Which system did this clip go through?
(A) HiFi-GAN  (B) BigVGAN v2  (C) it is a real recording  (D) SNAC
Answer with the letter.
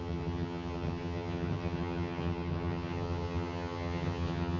A